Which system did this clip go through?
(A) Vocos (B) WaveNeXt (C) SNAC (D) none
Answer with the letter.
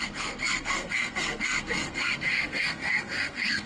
C